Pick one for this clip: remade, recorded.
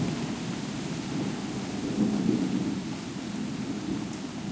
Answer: recorded